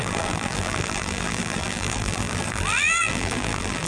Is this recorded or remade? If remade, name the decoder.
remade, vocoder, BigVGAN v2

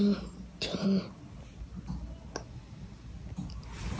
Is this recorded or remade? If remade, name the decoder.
recorded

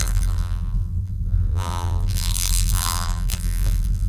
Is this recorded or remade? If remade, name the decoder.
remade, vocoder, BigVGAN v2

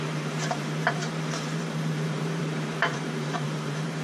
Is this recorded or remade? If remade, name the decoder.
remade, vocoder, BigVGAN v2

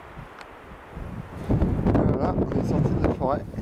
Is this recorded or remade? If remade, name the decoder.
recorded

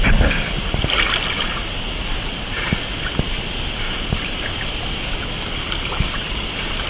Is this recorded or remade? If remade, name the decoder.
recorded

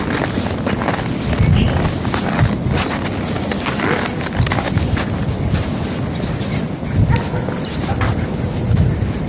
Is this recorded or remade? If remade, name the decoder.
recorded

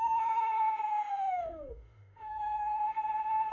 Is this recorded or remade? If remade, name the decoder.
remade, autoencoder, DAC-VAE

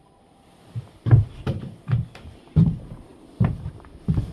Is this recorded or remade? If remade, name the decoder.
recorded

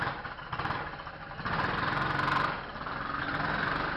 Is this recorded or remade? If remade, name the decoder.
recorded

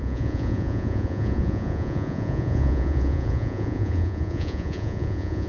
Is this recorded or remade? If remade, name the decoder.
remade, vocoder, Vocos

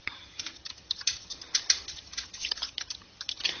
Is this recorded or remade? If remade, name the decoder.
remade, vocoder, HiFi-GAN